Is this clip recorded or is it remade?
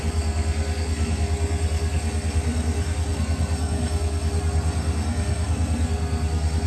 remade